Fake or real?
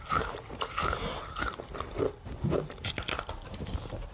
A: real